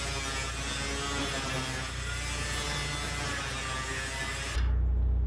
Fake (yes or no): no